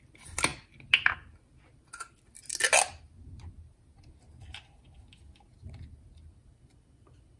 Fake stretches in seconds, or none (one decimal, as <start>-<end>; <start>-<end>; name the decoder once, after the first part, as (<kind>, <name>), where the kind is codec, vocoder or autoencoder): none